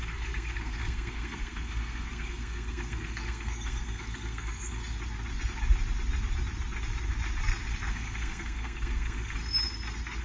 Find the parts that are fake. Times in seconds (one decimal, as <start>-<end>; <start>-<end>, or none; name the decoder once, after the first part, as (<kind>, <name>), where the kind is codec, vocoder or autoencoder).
0.0-4.8 (codec, SNAC); 7.9-9.4